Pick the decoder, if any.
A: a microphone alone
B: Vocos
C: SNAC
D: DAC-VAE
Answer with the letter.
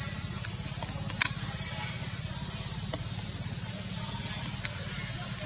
A